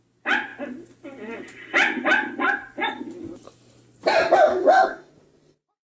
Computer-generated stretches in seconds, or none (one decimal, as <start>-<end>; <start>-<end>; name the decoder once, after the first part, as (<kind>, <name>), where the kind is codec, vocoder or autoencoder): 4.5-5.1 (codec, DAC)